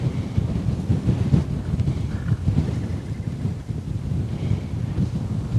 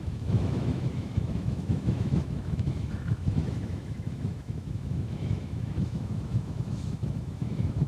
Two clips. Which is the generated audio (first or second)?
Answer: second